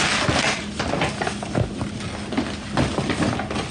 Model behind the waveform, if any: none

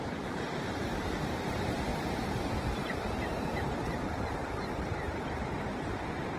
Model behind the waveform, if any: vocoder, BigVGAN v2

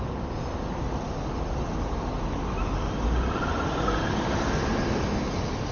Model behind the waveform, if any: none